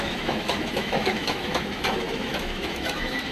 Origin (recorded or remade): remade